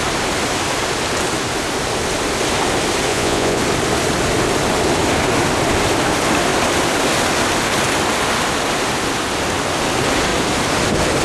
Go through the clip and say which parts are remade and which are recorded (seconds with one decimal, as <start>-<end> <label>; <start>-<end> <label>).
0.0-3.1 recorded; 3.1-3.6 remade; 3.6-11.2 recorded